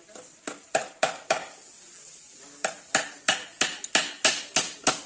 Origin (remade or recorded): recorded